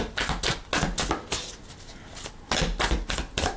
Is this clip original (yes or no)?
yes